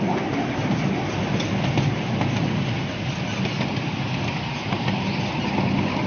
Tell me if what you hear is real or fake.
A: real